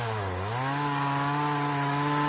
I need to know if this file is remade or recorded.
recorded